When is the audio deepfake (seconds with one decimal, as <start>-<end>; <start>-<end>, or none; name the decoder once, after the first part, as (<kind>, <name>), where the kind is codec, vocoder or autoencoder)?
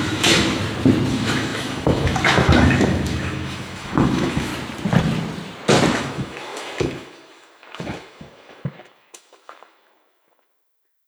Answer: 0.0-0.6 (autoencoder, DAC-VAE); 1.1-4.5; 5.9-11.1